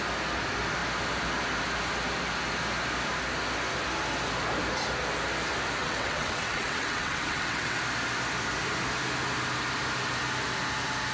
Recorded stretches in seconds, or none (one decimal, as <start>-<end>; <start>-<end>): 0.0-5.8; 7.8-11.1

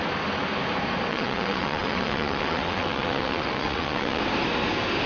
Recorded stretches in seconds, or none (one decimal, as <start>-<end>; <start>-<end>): 0.0-1.1; 4.2-5.1